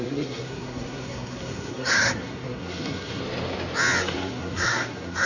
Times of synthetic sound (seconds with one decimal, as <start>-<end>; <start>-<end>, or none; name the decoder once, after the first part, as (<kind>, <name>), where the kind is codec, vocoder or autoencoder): 0.0-3.2 (codec, SNAC); 4.0-5.3